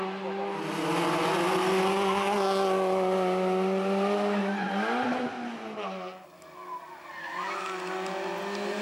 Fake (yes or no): no